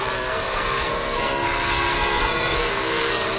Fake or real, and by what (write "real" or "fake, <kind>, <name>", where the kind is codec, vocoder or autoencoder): fake, codec, SNAC